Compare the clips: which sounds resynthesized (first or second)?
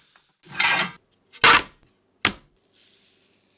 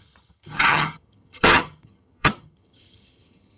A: second